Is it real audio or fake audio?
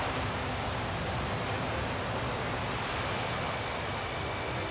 real